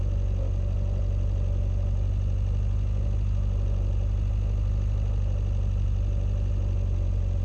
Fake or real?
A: real